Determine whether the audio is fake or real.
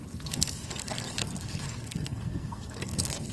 fake